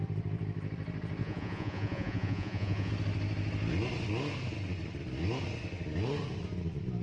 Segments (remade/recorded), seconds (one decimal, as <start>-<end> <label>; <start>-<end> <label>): 0.0-1.2 recorded; 1.2-2.9 remade; 2.9-7.0 recorded